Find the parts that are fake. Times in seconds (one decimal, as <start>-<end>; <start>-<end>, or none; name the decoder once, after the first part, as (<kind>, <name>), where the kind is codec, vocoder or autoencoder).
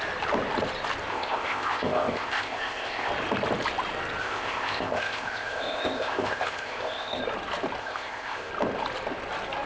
1.1-3.1 (codec, ZipCodec); 4.2-7.2; 7.8-8.5